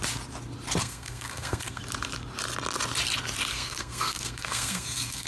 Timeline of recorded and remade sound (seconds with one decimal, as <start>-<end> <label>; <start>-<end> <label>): 0.0-0.8 recorded; 0.8-1.8 remade; 1.8-3.5 recorded; 3.5-5.3 remade